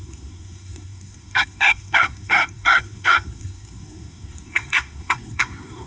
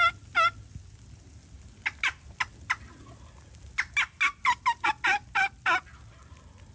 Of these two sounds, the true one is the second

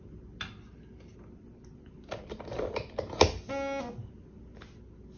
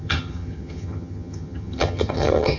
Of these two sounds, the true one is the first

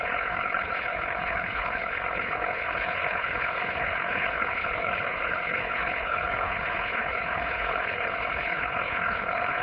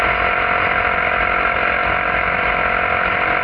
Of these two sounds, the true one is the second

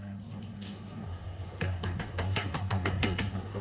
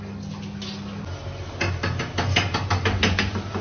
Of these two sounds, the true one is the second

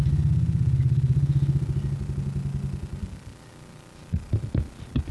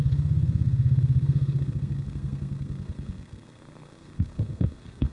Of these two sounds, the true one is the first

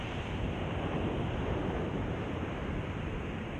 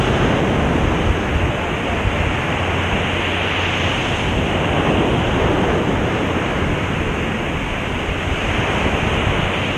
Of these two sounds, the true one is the second